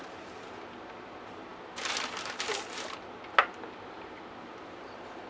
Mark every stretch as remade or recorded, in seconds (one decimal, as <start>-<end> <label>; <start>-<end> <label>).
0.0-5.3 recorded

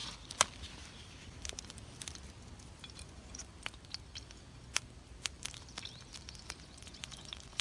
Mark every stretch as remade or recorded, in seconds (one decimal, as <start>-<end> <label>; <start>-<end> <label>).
0.0-3.0 recorded; 3.0-3.5 remade; 3.5-6.6 recorded; 6.6-7.6 remade

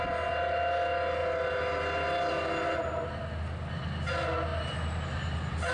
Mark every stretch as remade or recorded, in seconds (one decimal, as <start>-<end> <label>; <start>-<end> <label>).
0.0-5.7 recorded

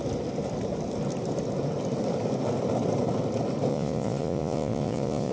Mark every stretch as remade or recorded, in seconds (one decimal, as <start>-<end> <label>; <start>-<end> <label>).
0.0-3.7 recorded; 3.7-5.3 remade

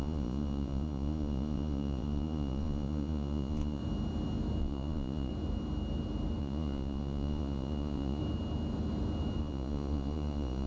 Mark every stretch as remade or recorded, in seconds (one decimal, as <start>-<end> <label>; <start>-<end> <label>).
0.0-3.8 remade; 3.8-4.6 recorded; 4.6-5.3 remade; 5.3-6.4 recorded; 6.4-8.2 remade; 8.2-9.4 recorded; 9.4-10.7 remade